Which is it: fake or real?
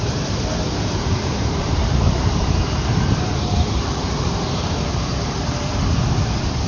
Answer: fake